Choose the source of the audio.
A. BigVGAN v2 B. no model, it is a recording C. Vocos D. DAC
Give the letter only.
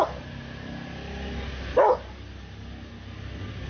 B